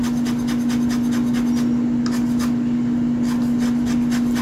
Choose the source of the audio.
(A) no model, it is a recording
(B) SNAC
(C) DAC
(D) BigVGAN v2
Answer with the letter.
A